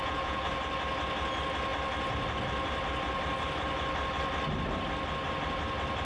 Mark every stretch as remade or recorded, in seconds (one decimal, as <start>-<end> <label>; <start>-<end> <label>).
0.0-0.5 remade; 0.5-6.0 recorded